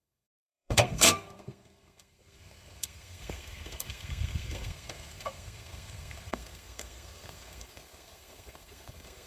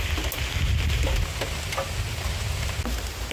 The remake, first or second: first